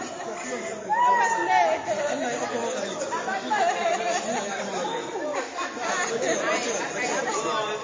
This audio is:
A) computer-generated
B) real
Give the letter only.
B